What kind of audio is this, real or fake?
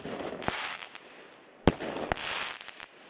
real